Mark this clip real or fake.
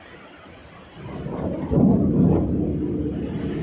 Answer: real